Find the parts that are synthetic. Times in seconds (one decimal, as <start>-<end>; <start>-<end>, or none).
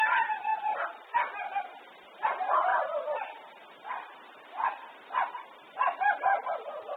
2.7-7.0